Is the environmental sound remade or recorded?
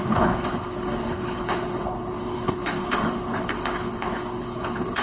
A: remade